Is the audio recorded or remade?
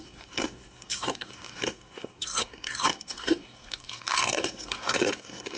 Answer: remade